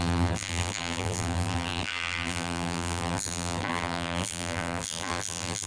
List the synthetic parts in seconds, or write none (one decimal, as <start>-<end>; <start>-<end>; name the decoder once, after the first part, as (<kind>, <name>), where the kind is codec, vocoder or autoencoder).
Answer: 0.0-5.7 (vocoder, BigVGAN v2)